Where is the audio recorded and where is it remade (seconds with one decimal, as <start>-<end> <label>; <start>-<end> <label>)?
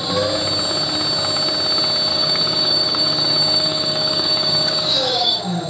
0.0-2.1 recorded; 2.1-5.7 remade